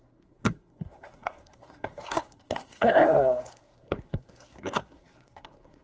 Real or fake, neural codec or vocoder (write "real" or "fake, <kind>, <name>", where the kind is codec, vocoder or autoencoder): fake, codec, SNAC